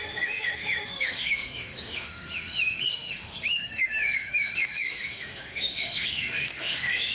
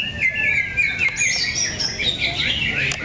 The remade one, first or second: first